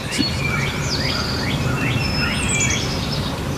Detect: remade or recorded recorded